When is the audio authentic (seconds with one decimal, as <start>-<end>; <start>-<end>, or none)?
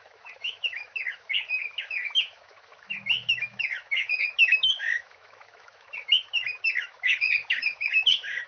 none